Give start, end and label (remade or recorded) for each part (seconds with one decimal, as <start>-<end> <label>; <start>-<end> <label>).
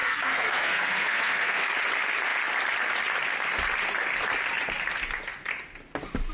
0.0-1.7 remade; 1.7-6.3 recorded